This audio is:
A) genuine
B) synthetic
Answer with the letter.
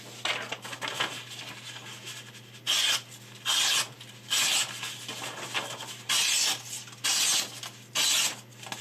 A